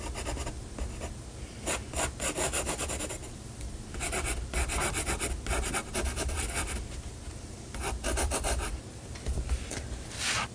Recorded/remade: recorded